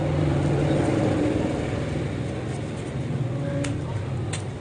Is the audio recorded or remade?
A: recorded